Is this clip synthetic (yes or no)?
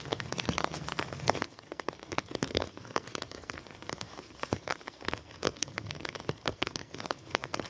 yes